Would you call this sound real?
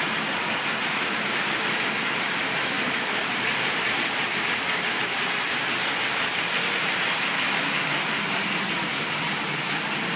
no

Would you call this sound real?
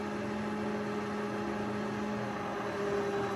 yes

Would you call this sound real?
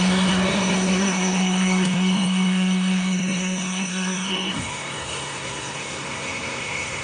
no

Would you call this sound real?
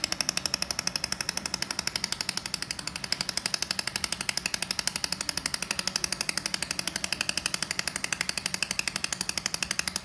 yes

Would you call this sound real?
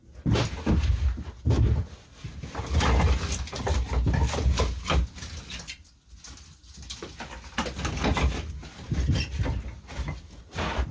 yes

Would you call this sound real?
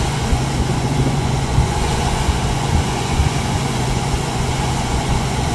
no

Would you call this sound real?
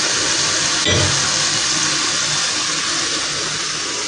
yes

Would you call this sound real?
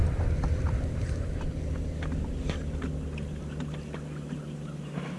yes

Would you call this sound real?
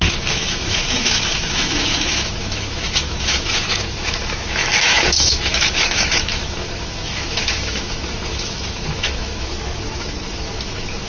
no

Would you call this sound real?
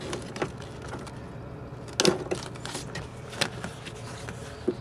yes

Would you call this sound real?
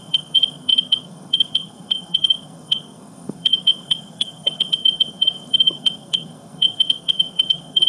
no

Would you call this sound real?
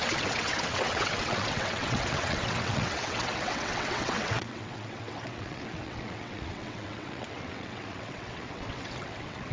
no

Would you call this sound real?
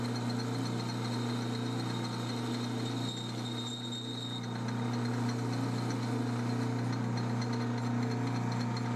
yes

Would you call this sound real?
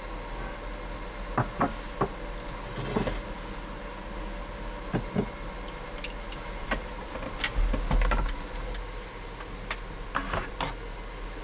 yes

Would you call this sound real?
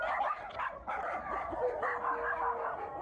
yes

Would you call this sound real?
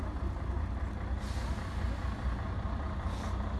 yes